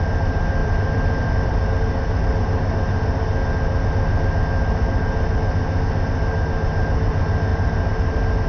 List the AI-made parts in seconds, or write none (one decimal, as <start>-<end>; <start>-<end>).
0.6-1.5; 7.5-8.1